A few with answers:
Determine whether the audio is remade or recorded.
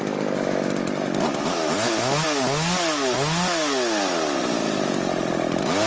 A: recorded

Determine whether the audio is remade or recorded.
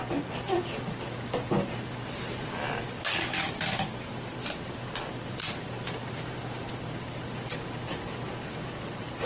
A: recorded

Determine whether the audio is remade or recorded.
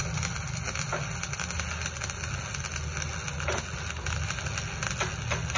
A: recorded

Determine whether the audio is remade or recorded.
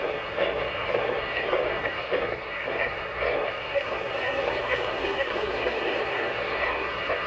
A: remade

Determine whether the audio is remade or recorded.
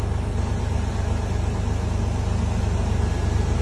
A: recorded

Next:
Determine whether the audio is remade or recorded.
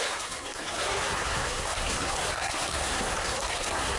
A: remade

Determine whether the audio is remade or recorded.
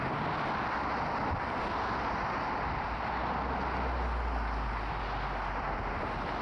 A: recorded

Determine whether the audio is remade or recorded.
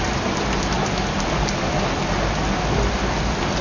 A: recorded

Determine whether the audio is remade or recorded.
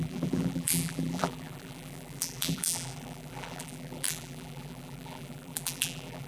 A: remade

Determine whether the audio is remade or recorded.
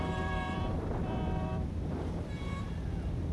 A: remade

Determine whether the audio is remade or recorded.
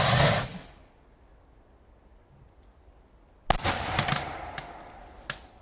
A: recorded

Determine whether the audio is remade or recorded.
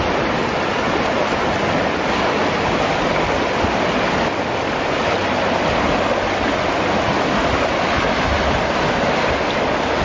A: recorded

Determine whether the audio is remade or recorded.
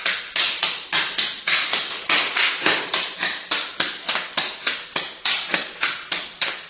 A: recorded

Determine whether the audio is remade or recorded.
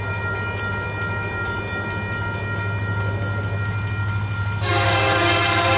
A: recorded